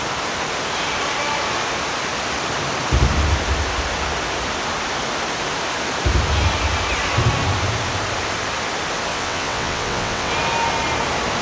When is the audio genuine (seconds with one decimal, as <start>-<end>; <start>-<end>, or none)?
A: 0.0-9.1; 10.3-11.4